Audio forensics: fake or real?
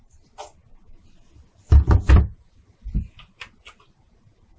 real